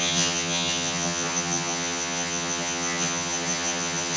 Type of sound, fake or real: fake